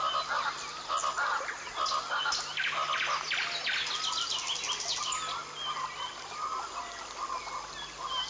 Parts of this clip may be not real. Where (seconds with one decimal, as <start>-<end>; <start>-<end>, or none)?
none